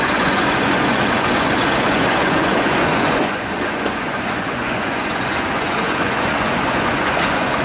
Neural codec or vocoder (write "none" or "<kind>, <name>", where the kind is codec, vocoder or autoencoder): vocoder, Vocos